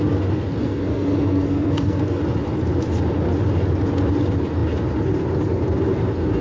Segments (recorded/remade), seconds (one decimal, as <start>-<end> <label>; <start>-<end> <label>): 0.0-0.6 recorded; 0.6-2.2 remade; 2.2-6.4 recorded